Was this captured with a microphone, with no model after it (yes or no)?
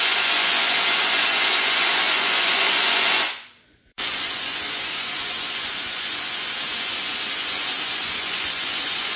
no